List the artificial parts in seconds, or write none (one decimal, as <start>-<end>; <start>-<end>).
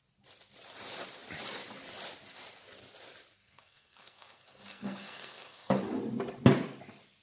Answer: 3.4-5.8